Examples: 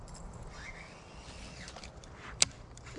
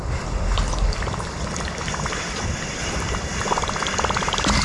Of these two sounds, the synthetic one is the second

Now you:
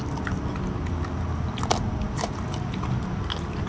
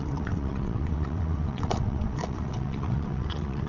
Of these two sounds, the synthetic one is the second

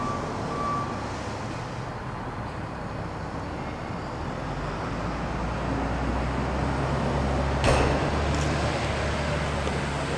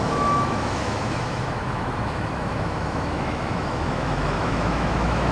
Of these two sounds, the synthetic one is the second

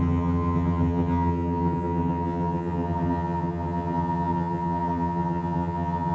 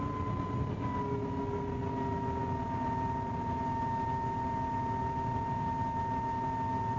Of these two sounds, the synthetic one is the first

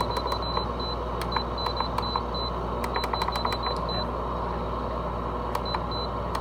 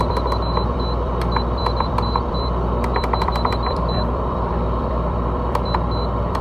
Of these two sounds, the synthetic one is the second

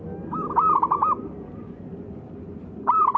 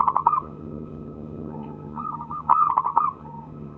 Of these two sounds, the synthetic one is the second